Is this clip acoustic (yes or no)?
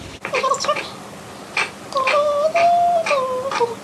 yes